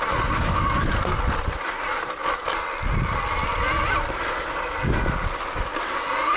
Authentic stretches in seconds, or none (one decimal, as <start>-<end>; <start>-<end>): 0.0-6.4